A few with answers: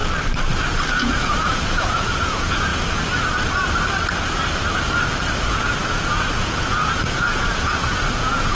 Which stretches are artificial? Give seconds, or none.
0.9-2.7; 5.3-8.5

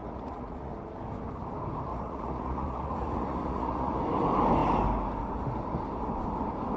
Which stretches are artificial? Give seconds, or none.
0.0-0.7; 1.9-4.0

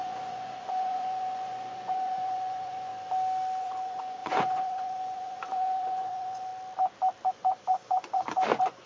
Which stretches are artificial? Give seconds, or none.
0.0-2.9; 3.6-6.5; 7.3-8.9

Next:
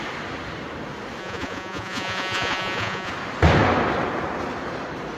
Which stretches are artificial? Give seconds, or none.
1.2-3.1

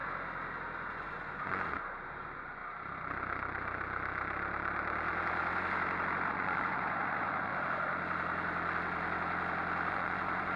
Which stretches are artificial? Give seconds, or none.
0.9-2.6; 6.3-7.5; 9.9-10.6

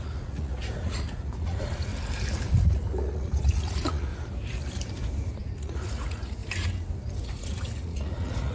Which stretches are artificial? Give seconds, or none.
0.0-1.9; 2.5-4.1; 5.4-6.4; 7.2-8.5

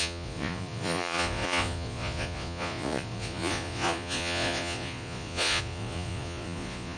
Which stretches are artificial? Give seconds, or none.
0.0-7.0

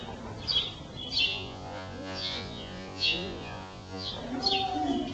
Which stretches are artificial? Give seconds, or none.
1.3-4.1